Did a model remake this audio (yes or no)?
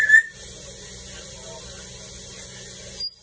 no